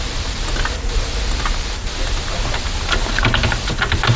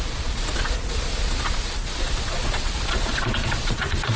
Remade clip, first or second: second